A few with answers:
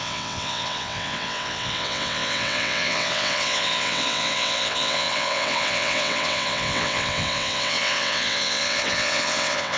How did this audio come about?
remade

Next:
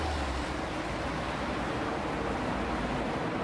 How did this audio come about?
recorded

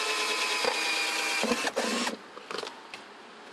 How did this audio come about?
recorded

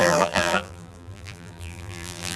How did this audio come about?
remade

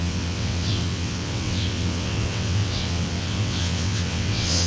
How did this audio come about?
remade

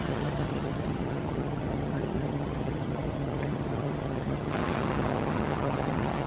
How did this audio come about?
remade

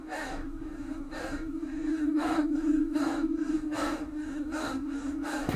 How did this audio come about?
remade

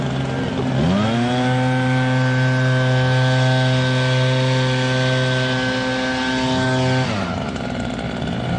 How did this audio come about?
recorded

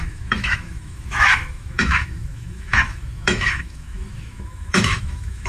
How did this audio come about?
remade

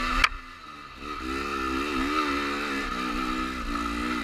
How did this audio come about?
recorded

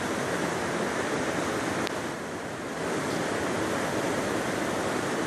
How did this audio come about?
recorded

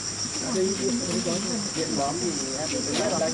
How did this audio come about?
recorded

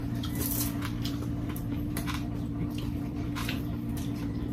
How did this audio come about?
remade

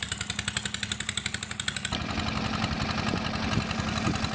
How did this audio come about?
recorded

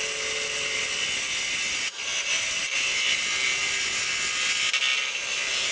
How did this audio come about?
recorded